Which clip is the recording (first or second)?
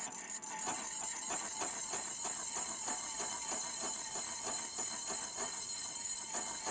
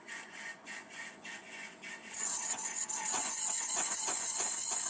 first